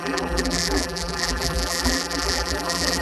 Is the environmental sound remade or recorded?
remade